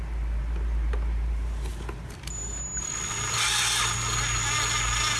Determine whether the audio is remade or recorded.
recorded